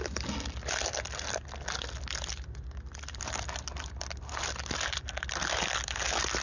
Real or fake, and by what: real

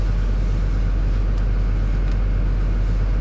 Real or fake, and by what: real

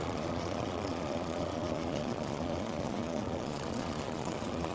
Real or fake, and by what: fake, vocoder, Vocos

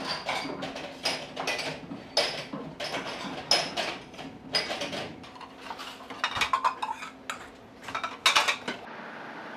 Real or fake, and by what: real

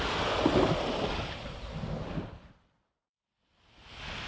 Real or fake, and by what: real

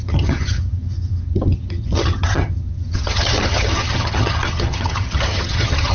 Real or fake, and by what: fake, vocoder, HiFi-GAN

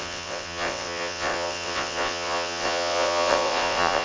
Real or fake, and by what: fake, vocoder, WaveNeXt